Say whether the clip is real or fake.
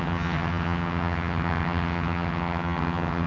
fake